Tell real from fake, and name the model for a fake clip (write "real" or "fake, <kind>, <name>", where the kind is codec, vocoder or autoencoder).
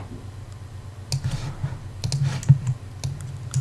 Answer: real